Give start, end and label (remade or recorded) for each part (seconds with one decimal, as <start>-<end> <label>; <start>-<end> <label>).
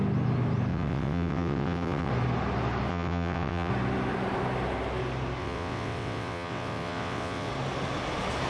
0.0-0.7 recorded; 0.7-2.1 remade; 2.1-2.9 recorded; 2.9-3.7 remade; 3.7-5.4 recorded; 5.4-7.5 remade; 7.5-8.5 recorded